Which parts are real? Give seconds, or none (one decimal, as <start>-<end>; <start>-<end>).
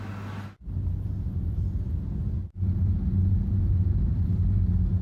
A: 0.0-5.0